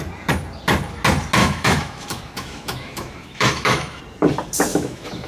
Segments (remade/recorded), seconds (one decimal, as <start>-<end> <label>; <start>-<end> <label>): 0.0-1.4 recorded; 1.4-4.0 remade; 4.0-4.7 recorded; 4.7-5.3 remade